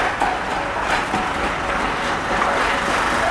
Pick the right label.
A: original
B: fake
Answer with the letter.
A